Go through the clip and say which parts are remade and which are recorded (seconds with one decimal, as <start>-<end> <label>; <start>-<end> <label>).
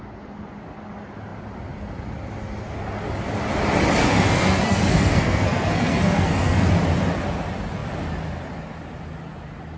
0.0-4.0 recorded; 4.0-6.7 remade; 6.7-9.8 recorded